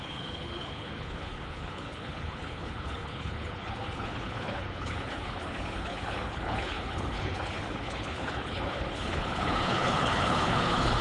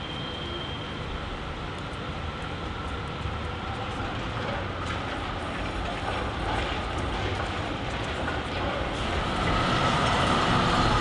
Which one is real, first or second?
second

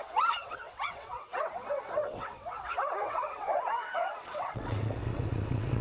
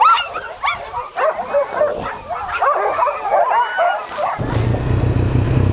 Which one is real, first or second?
second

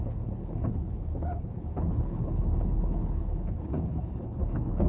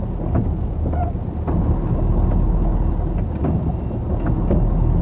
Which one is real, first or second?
second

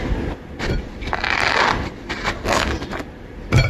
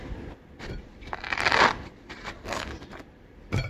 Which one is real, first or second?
first